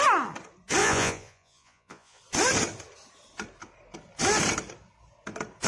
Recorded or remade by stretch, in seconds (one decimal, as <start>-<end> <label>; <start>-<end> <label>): 0.0-0.8 recorded; 0.8-2.2 remade; 2.2-5.7 recorded

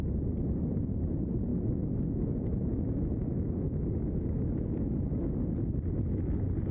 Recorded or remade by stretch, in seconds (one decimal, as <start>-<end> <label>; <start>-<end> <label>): 0.0-1.5 recorded; 1.5-5.3 remade; 5.3-6.7 recorded

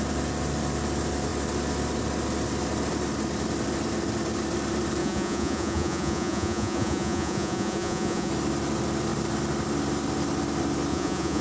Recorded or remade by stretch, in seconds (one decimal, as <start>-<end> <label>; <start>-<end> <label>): 0.0-5.0 recorded; 5.0-8.3 remade; 8.3-10.9 recorded; 10.9-11.4 remade

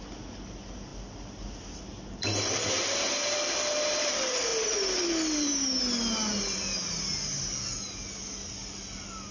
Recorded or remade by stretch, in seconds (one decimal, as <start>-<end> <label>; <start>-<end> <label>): 0.0-5.5 remade; 5.5-8.2 recorded; 8.2-9.3 remade

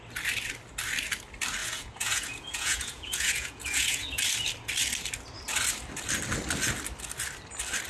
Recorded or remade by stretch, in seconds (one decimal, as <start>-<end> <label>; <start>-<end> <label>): 0.0-1.6 recorded; 1.6-4.2 remade; 4.2-7.9 recorded

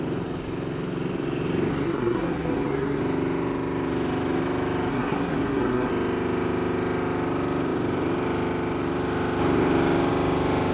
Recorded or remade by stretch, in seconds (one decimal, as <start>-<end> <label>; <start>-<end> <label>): 0.0-1.7 recorded; 1.7-3.0 remade; 3.0-4.9 recorded; 4.9-5.9 remade; 5.9-10.7 recorded